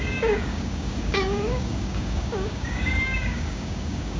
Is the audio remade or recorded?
remade